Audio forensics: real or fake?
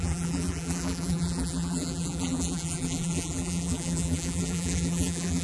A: fake